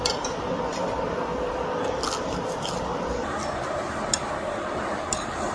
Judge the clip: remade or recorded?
recorded